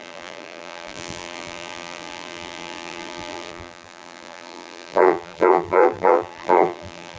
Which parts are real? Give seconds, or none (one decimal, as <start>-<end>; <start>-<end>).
none